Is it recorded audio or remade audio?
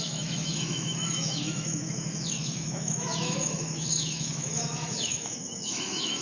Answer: remade